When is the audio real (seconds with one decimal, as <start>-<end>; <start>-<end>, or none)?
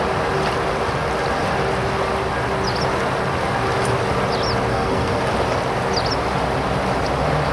0.0-4.7; 5.2-7.5